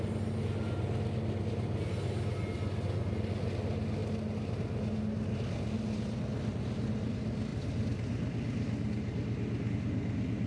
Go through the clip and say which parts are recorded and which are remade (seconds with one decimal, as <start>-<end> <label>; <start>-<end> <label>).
0.0-10.5 recorded